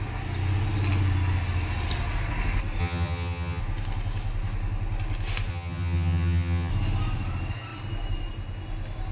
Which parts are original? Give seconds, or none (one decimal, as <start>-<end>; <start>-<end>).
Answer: 0.0-2.8; 3.6-5.5; 6.7-9.1